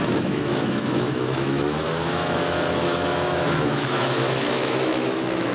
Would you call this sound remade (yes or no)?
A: yes